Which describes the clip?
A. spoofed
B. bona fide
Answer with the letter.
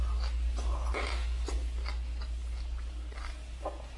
B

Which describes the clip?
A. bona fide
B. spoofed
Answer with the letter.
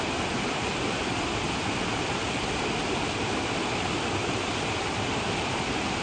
A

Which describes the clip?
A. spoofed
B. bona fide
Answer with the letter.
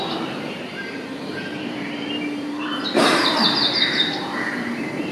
A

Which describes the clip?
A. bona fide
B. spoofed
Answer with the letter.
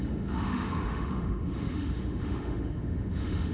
B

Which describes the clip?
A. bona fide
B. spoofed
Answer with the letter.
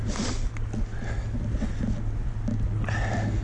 A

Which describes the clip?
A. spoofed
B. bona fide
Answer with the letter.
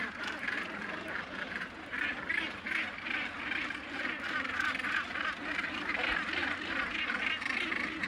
B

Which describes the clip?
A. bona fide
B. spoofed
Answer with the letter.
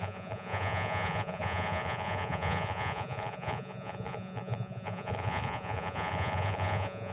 B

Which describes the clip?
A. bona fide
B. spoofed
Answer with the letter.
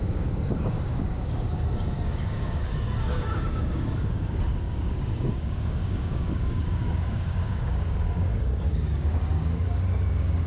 B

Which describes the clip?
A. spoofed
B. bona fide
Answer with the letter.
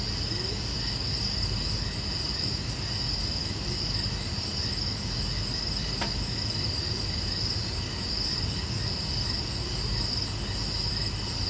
B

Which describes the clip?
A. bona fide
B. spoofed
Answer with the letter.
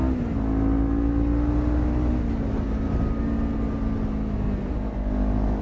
A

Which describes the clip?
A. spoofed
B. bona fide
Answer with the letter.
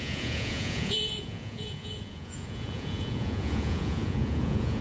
A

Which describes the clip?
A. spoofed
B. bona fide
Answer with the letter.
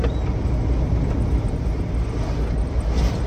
B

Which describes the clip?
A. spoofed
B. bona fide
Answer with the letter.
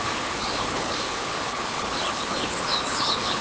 A